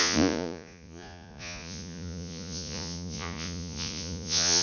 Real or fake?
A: fake